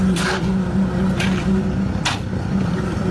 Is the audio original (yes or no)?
yes